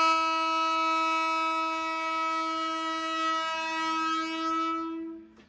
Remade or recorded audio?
recorded